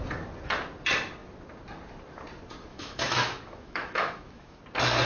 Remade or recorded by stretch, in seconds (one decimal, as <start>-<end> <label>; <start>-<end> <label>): 0.0-2.7 recorded; 2.7-4.6 remade; 4.6-5.1 recorded